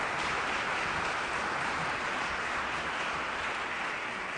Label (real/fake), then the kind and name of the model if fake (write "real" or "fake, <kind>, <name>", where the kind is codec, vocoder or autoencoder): real